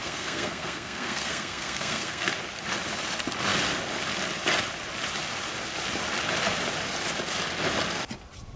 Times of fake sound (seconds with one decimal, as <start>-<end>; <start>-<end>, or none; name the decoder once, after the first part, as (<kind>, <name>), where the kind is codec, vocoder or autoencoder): 0.0-2.3 (codec, SNAC)